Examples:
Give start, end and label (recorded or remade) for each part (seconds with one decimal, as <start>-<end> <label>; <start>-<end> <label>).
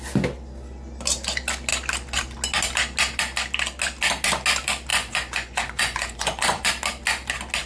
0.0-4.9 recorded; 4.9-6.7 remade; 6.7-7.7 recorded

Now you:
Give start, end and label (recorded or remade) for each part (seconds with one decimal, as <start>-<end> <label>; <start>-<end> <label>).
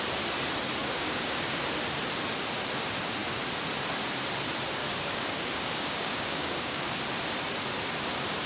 0.0-0.8 recorded; 0.8-1.6 remade; 1.6-4.8 recorded; 4.8-6.9 remade; 6.9-8.5 recorded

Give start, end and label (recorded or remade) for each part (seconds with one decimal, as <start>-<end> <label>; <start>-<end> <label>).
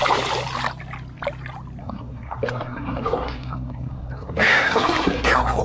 0.0-1.8 recorded; 1.8-5.6 remade